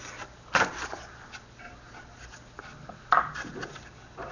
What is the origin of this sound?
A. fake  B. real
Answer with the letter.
B